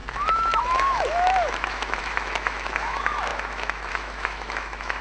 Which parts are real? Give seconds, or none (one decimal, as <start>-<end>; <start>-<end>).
none

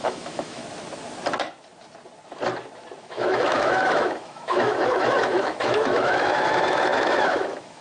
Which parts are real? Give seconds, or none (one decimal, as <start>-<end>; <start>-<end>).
0.6-3.0